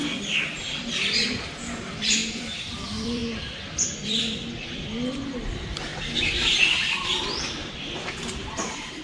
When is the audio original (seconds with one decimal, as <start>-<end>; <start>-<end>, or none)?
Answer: 0.0-0.5; 3.2-3.9